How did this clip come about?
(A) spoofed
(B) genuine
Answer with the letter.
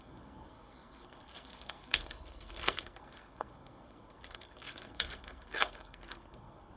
A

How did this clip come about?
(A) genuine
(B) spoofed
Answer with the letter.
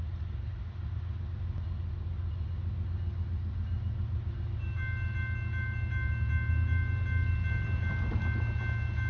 A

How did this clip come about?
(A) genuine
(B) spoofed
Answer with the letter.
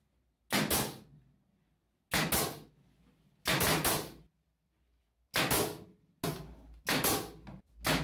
A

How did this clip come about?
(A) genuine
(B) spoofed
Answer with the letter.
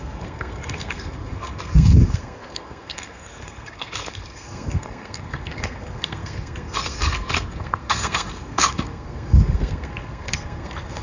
B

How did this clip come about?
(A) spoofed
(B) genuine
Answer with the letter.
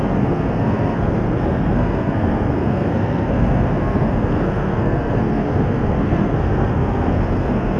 A